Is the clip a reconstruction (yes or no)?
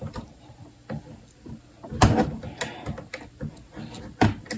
no